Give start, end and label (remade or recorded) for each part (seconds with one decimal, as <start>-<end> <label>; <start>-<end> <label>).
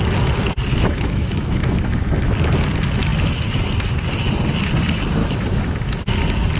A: 0.0-0.7 recorded; 0.7-2.3 remade; 2.3-5.2 recorded; 5.2-6.0 remade; 6.0-6.6 recorded